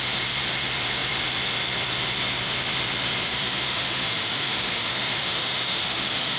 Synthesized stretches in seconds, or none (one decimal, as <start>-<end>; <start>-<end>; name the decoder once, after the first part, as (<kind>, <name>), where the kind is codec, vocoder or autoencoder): 3.3-6.4 (autoencoder, DAC-VAE)